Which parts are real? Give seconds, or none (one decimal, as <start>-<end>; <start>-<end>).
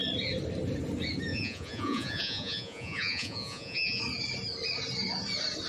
0.0-1.3; 4.0-5.7